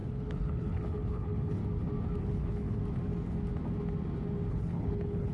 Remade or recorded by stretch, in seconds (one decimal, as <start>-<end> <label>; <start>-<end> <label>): 0.0-1.6 remade; 1.6-2.2 recorded; 2.2-2.8 remade; 2.8-4.5 recorded; 4.5-5.3 remade